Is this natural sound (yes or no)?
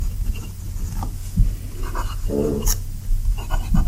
yes